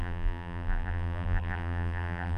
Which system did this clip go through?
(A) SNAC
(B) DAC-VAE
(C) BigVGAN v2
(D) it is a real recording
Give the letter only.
C